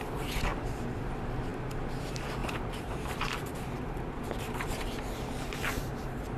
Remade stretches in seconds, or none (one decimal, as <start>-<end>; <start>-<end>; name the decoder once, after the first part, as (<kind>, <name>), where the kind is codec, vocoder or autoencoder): 0.5-1.0 (vocoder, BigVGAN v2); 2.4-6.4